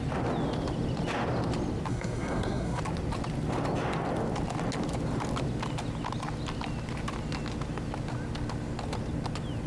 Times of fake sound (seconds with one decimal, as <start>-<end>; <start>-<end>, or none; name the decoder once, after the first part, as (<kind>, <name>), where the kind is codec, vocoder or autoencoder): 1.9-2.8 (codec, SNAC)

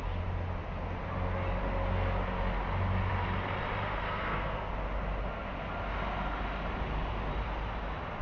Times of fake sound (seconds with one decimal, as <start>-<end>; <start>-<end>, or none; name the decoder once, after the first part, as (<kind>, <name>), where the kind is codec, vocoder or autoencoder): 3.9-4.7 (codec, SNAC)

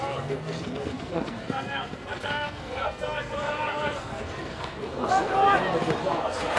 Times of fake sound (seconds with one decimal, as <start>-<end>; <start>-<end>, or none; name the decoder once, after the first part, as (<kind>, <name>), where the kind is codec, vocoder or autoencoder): 0.0-5.3 (codec, SNAC); 6.0-6.6

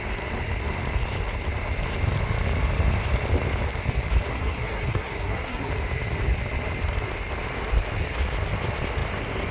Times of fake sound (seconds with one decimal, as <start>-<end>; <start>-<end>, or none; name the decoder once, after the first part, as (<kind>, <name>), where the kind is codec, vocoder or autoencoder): 4.3-5.7 (codec, SNAC)

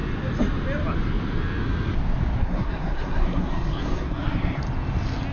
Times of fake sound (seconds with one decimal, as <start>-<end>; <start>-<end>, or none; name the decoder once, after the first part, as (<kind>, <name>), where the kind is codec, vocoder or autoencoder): 2.4-4.6 (codec, SNAC)

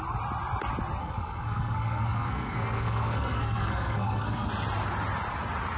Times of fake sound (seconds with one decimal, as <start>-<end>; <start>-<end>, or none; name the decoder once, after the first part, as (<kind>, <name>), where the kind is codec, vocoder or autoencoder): 1.0-4.5 (codec, SNAC)

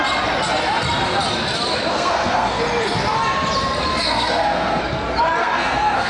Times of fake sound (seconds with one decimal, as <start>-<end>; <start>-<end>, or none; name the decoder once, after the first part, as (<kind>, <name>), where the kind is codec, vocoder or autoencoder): 1.9-2.6 (codec, SNAC); 3.9-4.8; 5.4-6.1